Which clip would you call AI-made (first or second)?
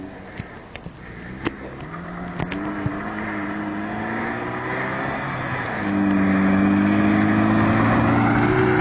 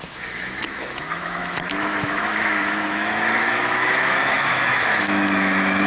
second